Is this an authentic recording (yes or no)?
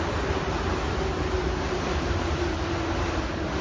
no